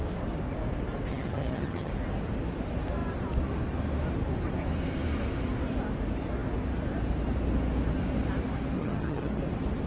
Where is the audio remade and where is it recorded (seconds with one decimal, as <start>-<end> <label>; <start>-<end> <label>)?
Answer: 0.0-1.1 recorded; 1.1-1.9 remade; 1.9-8.8 recorded; 8.8-9.4 remade; 9.4-9.9 recorded